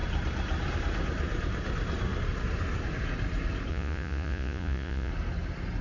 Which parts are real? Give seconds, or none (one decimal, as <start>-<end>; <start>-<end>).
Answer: 0.0-3.7; 5.1-5.8